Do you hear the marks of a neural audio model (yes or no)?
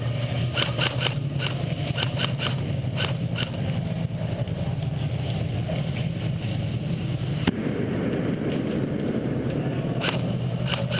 no